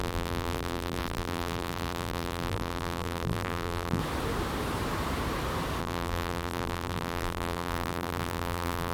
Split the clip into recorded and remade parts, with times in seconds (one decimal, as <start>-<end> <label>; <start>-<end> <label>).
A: 0.0-4.0 remade; 4.0-5.8 recorded; 5.8-8.9 remade